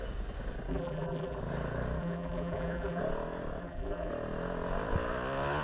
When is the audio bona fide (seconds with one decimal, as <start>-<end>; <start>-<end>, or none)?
0.0-0.7; 1.4-2.0; 3.0-3.6; 4.1-5.6